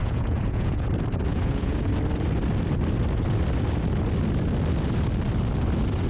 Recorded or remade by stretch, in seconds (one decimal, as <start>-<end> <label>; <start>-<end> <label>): 0.0-0.9 remade; 0.9-1.3 recorded; 1.3-1.9 remade; 1.9-6.1 recorded